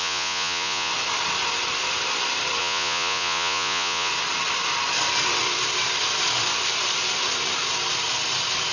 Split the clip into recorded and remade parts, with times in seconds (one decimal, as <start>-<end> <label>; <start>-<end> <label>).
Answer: 0.0-0.9 remade; 0.9-2.6 recorded; 2.6-4.1 remade; 4.1-8.7 recorded